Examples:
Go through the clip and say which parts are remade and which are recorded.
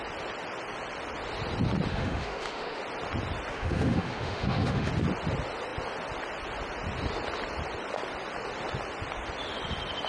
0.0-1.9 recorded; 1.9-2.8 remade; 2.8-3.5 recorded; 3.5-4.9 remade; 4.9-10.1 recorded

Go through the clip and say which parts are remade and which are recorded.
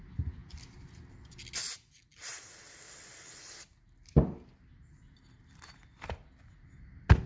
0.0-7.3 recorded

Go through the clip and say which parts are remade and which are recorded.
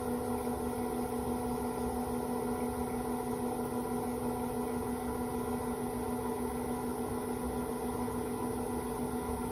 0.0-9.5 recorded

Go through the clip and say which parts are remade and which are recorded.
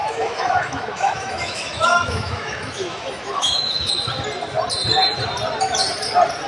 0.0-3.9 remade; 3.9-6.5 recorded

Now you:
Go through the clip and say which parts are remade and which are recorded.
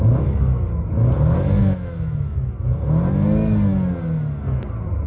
0.0-1.6 recorded; 1.6-2.5 remade; 2.5-5.1 recorded